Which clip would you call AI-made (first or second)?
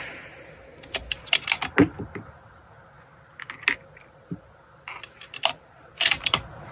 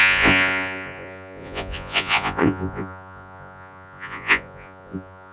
second